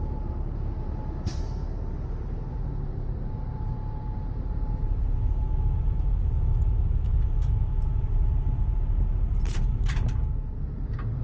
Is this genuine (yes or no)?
no